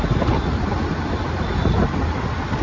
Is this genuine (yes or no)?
yes